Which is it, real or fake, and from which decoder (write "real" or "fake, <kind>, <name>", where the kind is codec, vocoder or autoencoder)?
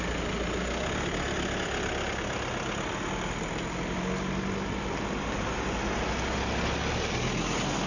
real